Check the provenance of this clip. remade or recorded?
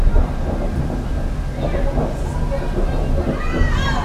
recorded